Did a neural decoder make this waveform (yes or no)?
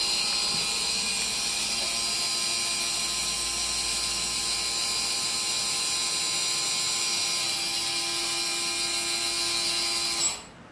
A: no